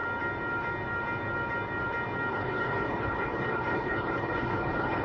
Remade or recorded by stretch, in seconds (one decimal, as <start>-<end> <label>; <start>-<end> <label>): 0.0-2.3 recorded; 2.3-5.0 remade